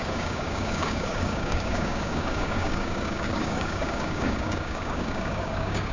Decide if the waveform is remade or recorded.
remade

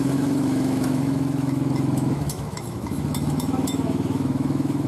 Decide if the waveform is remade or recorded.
remade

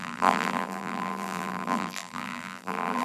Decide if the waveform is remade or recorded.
remade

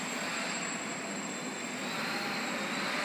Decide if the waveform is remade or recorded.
recorded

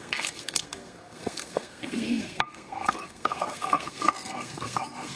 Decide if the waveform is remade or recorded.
remade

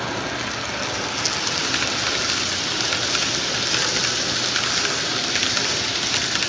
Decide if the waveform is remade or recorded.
recorded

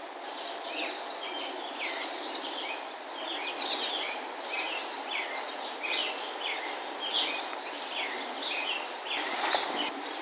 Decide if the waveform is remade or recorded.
recorded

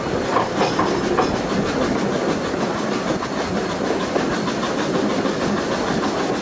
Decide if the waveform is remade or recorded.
recorded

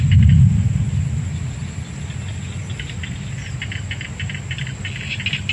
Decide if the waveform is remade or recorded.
recorded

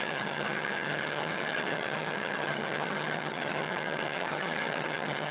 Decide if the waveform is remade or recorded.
remade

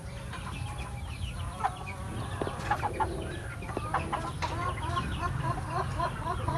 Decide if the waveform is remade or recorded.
recorded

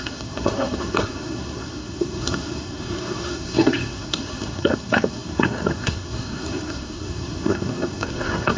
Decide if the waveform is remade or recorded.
remade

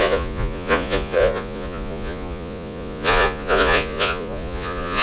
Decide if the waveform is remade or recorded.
remade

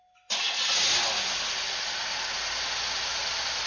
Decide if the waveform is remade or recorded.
recorded